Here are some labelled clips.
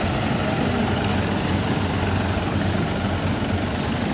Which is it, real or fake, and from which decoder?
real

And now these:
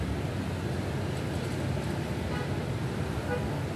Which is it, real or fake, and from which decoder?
real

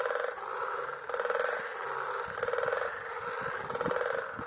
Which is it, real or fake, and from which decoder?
real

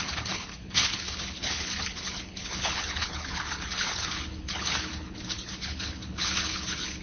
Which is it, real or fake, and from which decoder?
fake, codec, HILCodec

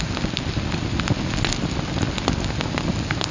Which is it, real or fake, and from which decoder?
real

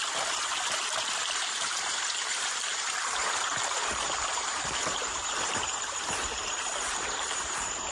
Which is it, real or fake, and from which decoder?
fake, vocoder, BigVGAN v2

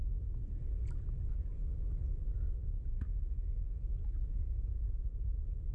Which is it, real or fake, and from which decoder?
real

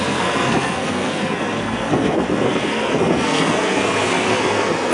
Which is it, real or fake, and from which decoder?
fake, codec, SNAC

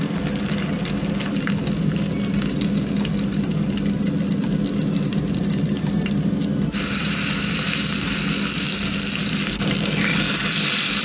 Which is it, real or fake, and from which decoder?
real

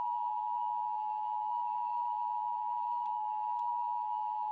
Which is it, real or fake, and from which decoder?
fake, codec, SNAC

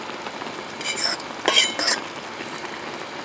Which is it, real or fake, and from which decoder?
real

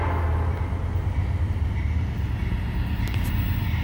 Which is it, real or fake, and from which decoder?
real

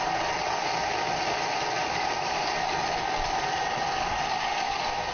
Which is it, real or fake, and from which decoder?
real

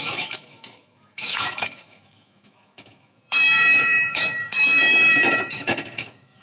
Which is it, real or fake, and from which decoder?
fake, autoencoder, DAC-VAE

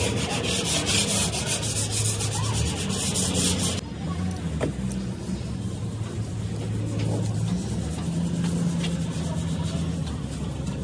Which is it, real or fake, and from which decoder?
real